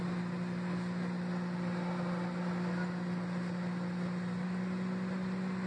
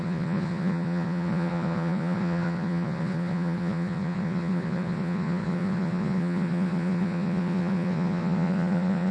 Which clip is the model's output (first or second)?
second